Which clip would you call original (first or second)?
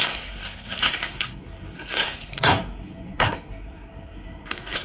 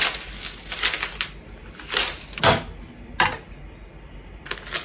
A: second